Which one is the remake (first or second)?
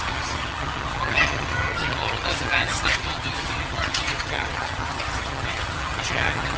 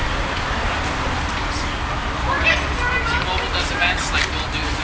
first